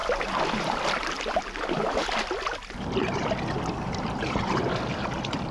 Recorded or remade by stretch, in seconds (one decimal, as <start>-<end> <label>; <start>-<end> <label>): 0.0-5.5 recorded